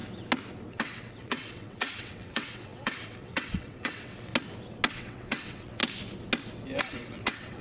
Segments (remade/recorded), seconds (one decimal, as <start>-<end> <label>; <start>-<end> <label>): 0.0-0.7 recorded; 0.7-4.3 remade; 4.3-4.9 recorded; 4.9-5.8 remade; 5.8-6.8 recorded; 6.8-7.6 remade